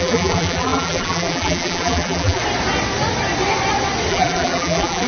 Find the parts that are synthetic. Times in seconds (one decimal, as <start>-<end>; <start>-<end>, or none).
0.0-2.4; 4.1-5.1